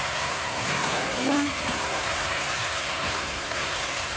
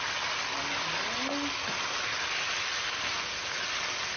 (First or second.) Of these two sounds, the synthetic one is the first